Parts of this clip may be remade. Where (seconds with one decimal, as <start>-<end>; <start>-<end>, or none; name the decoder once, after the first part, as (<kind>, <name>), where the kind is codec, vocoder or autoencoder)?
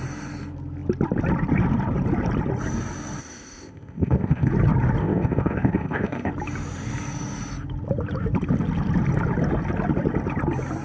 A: 3.2-4.5 (codec, ZipCodec); 5.0-6.3